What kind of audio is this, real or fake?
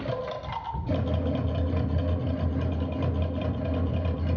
real